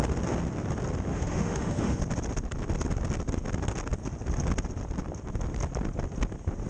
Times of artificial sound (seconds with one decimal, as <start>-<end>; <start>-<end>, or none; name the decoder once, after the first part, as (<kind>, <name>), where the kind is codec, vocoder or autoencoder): 1.1-2.0 (autoencoder, DAC-VAE)